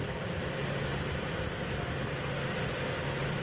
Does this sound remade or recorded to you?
recorded